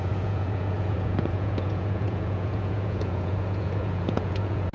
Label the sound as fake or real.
fake